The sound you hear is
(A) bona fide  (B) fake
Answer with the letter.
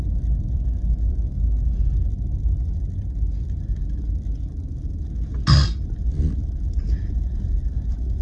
A